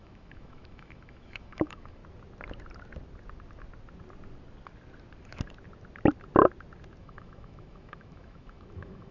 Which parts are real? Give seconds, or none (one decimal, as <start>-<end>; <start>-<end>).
2.0-7.0